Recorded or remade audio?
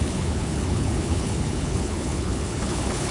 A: remade